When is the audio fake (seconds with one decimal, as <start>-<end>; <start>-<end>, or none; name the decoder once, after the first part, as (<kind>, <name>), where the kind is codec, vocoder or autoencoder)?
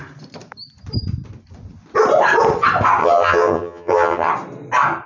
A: 3.0-4.3 (vocoder, HiFi-GAN)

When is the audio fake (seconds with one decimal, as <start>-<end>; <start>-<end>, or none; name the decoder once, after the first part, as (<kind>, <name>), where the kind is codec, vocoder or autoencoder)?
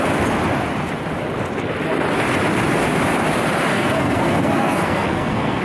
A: 3.7-5.6 (codec, SNAC)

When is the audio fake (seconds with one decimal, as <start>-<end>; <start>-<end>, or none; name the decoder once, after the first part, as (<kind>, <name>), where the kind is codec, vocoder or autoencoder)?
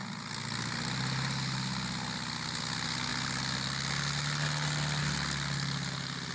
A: none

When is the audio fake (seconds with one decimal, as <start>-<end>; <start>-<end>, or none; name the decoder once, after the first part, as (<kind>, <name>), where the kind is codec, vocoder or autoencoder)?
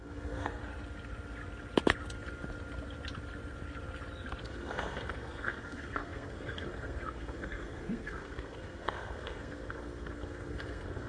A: 0.0-0.6 (codec, SNAC); 4.4-11.1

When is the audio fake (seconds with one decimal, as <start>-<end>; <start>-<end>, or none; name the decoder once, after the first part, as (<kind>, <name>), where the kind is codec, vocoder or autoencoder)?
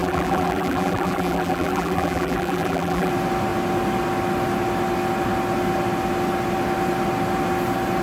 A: 0.0-3.1 (vocoder, BigVGAN v2)